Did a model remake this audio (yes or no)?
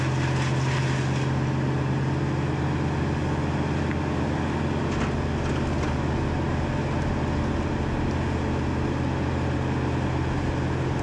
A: no